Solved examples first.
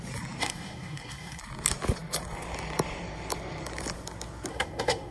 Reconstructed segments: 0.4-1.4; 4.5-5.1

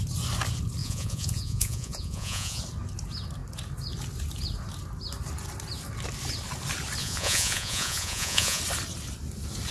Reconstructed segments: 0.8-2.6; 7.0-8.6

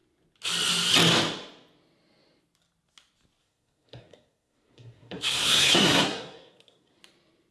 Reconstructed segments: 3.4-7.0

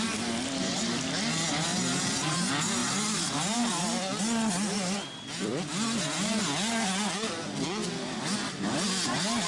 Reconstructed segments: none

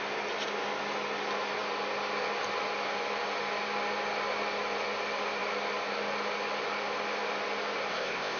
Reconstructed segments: 7.9-8.4